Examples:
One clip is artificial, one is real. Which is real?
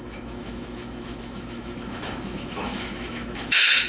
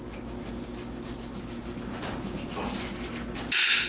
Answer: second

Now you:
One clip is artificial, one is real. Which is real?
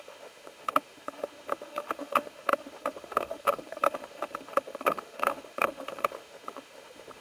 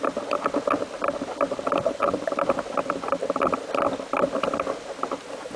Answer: second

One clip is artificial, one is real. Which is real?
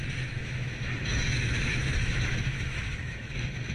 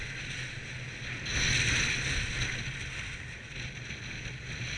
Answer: second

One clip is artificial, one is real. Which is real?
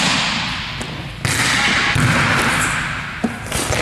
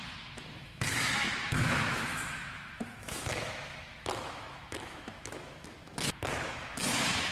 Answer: first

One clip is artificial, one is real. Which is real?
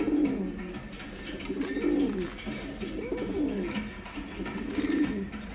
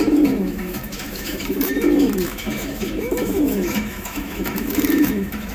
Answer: first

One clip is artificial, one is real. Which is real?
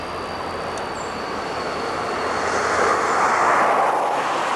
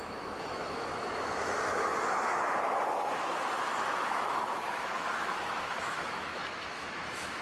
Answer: first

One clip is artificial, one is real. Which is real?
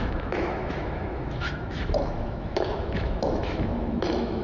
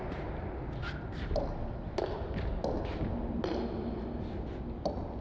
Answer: second